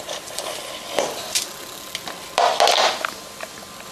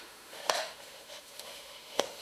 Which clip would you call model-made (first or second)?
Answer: second